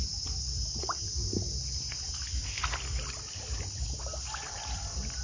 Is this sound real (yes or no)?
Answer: yes